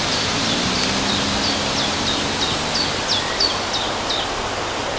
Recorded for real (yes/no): yes